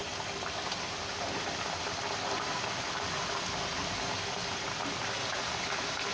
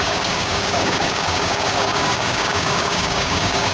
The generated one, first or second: second